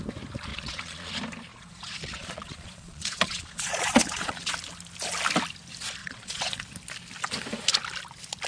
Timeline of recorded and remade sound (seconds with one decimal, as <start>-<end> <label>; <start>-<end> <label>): 0.0-0.5 recorded; 0.5-1.1 remade; 1.1-1.5 recorded; 1.5-4.5 remade; 4.5-6.0 recorded; 6.0-6.5 remade; 6.5-8.5 recorded